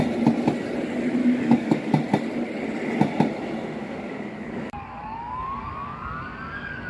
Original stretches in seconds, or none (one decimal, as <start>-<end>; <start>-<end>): 0.0-1.2; 1.9-3.8